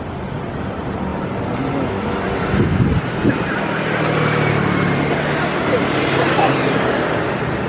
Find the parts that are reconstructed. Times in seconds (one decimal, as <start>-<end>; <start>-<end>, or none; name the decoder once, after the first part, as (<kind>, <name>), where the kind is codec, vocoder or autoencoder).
none